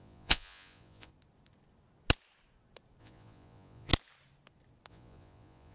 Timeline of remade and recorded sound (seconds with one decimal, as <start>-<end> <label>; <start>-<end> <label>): 0.0-1.1 remade; 1.1-3.0 recorded; 3.0-3.9 remade; 3.9-4.9 recorded; 4.9-5.7 remade